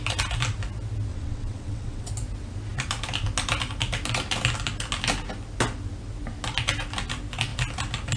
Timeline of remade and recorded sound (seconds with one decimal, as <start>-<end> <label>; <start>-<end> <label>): 0.0-1.1 recorded; 1.1-2.1 remade; 2.1-8.2 recorded